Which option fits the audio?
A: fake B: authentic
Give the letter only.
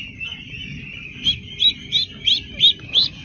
B